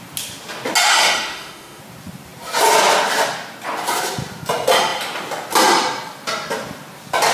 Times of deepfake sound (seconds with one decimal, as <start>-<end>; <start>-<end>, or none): 0.8-1.8